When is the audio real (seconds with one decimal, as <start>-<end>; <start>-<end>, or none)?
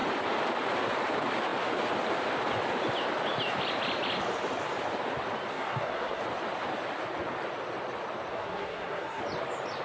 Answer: 0.0-5.5; 6.2-8.3; 9.2-9.8